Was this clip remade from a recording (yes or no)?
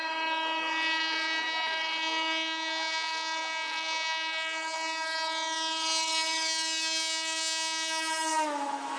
yes